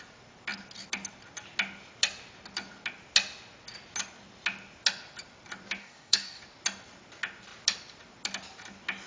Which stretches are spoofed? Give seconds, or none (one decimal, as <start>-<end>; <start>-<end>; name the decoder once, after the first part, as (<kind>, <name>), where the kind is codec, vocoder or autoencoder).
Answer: 5.8-6.4 (codec, DAC)